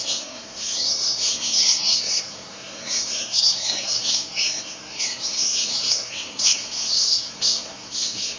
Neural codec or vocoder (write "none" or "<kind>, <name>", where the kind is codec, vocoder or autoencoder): codec, SNAC